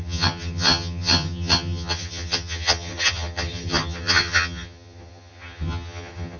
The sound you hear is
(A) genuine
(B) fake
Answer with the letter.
B